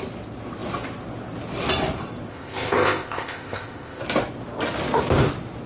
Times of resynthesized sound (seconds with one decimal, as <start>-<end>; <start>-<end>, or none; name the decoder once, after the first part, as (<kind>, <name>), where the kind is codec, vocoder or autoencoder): 2.3-4.0 (codec, ZipCodec)